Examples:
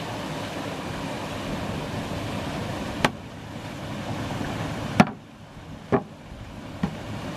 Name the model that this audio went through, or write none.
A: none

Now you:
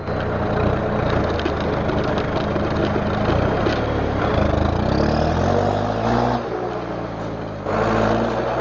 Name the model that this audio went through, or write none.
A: none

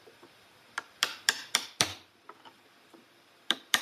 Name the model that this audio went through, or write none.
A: vocoder, BigVGAN v2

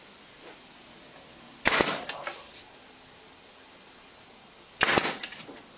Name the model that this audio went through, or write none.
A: none